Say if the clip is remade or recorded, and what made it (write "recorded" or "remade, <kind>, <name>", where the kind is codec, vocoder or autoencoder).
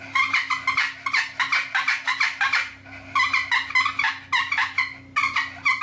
recorded